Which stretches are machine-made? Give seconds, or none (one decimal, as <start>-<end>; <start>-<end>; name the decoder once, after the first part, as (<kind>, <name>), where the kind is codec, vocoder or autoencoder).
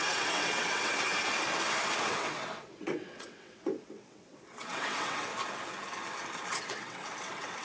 0.0-1.1 (vocoder, WaveNeXt); 2.0-5.3; 6.5-7.6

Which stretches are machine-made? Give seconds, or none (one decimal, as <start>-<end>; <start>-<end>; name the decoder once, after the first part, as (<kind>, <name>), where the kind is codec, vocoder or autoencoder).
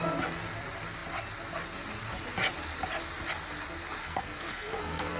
4.0-5.2 (codec, SNAC)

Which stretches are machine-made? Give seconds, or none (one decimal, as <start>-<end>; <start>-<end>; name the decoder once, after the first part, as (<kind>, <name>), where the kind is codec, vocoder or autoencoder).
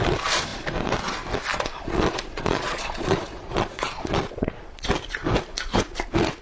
1.5-4.9 (vocoder, Vocos)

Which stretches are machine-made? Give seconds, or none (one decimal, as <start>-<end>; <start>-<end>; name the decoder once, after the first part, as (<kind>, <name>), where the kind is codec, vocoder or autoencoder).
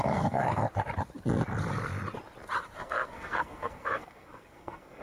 0.0-0.6 (codec, SNAC); 2.8-5.0